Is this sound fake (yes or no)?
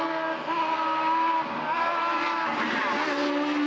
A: no